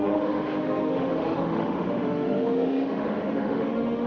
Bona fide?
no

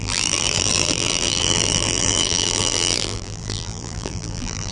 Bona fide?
no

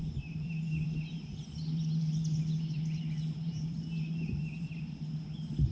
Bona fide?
no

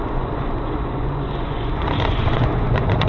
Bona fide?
no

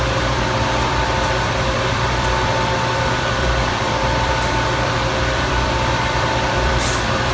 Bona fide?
no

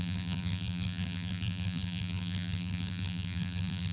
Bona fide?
no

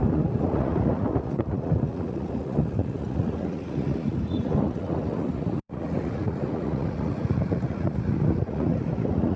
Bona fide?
no